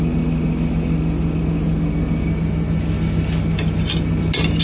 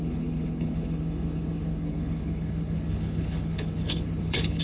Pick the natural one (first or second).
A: first